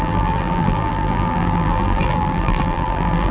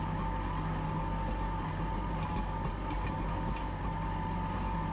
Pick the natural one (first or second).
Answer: second